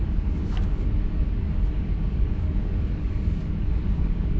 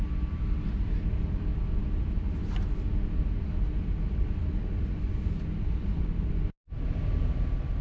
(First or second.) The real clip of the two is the second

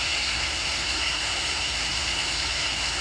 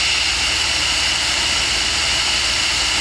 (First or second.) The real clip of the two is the second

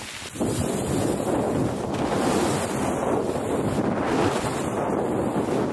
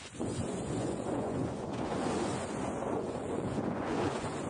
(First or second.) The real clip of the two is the first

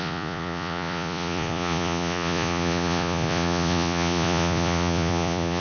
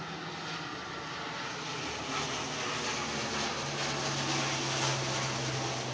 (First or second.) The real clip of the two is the second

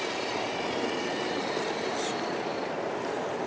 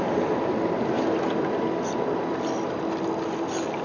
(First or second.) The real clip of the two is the second